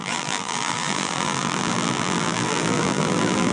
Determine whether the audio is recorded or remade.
remade